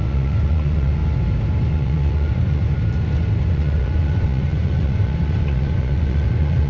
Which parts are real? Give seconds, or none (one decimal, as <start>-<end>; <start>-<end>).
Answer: 1.0-1.7; 2.6-3.5